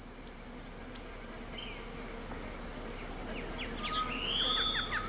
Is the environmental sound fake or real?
real